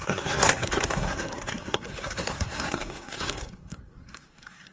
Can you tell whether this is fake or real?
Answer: fake